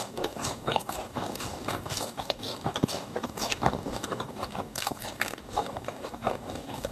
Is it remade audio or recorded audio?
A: remade